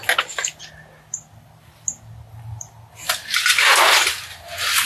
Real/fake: real